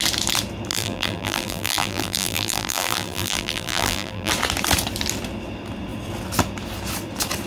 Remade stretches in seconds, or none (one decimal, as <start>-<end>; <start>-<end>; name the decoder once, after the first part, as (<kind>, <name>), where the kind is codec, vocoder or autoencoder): 0.7-4.3 (vocoder, BigVGAN v2)